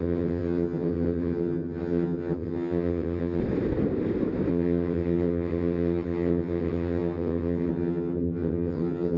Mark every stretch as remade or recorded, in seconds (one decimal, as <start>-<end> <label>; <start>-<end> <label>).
0.0-3.4 remade; 3.4-4.5 recorded; 4.5-9.2 remade